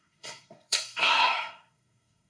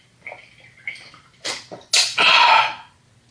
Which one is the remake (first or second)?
first